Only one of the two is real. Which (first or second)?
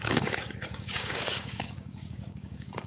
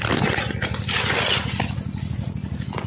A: second